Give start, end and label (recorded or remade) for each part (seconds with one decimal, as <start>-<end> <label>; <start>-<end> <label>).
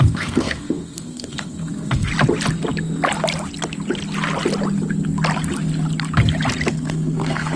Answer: 0.0-2.1 remade; 2.1-6.7 recorded; 6.7-7.6 remade